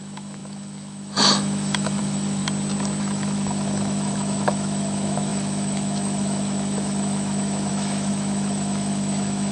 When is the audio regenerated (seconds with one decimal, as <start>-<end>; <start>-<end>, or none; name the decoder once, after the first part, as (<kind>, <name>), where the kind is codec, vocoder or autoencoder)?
0.0-2.4 (autoencoder, DAC-VAE); 3.0-9.5